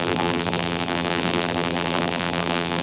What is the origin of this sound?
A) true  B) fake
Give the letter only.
B